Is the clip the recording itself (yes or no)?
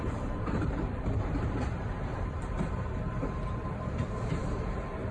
no